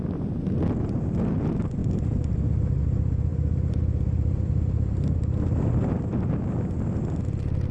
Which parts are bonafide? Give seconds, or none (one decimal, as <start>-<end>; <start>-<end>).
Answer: 0.0-1.8; 2.8-3.3; 6.8-7.7